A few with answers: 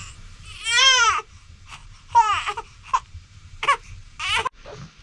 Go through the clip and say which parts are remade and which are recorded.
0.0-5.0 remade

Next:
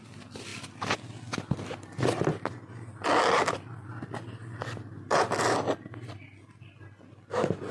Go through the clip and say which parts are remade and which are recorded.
0.0-7.7 recorded

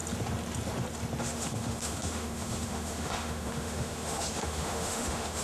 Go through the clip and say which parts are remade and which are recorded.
0.0-1.2 recorded; 1.2-5.4 remade

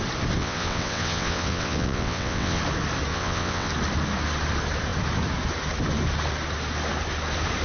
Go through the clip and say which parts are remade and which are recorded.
0.0-0.4 recorded; 0.4-2.6 remade; 2.6-3.1 recorded; 3.1-3.7 remade; 3.7-7.6 recorded

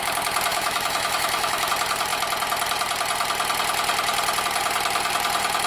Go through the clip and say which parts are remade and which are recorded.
0.0-0.5 recorded; 0.5-1.7 remade; 1.7-5.7 recorded